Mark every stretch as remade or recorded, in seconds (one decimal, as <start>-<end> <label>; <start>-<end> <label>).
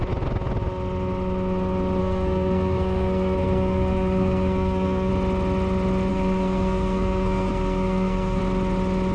0.0-2.0 recorded; 2.0-5.1 remade; 5.1-6.1 recorded; 6.1-8.4 remade; 8.4-9.1 recorded